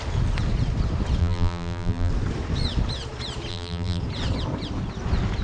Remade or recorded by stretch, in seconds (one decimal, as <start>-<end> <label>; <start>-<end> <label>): 0.0-1.2 recorded; 1.2-2.1 remade; 2.1-3.5 recorded; 3.5-4.0 remade; 4.0-5.4 recorded